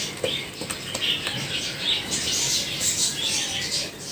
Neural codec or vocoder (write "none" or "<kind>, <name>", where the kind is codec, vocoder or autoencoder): none